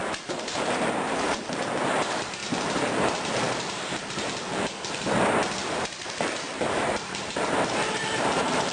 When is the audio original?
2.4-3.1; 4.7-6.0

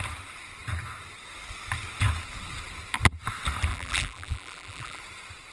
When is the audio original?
0.0-3.7; 5.0-5.5

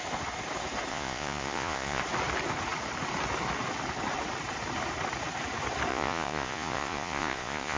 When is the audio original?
0.0-0.9; 2.0-5.9

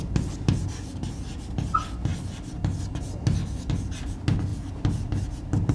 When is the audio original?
0.0-5.7

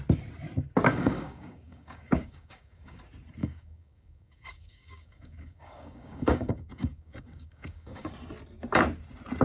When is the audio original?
0.0-0.9; 3.0-3.4; 8.1-9.4